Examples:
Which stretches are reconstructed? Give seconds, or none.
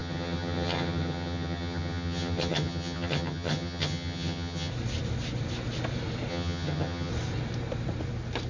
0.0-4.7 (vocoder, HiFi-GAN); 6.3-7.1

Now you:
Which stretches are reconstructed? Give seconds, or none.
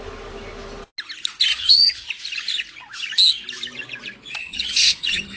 1.5-2.1 (vocoder, HiFi-GAN); 4.4-5.4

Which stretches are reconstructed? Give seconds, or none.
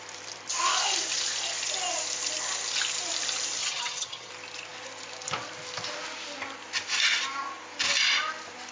3.6-4.3 (vocoder, HiFi-GAN)